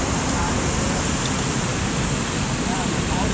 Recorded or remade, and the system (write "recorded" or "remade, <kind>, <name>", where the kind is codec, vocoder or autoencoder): remade, vocoder, BigVGAN v2